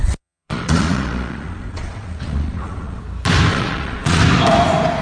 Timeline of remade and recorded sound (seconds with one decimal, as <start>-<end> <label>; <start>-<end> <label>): 0.0-3.0 remade; 3.0-3.5 recorded; 3.5-4.2 remade; 4.2-5.0 recorded